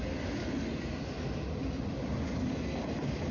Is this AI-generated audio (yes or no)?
no